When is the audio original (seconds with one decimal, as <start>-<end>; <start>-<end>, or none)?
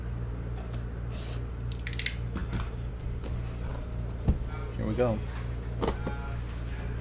0.0-3.7; 4.3-7.0